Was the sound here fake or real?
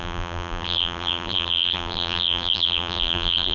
fake